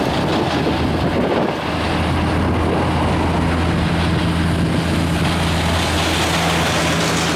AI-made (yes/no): no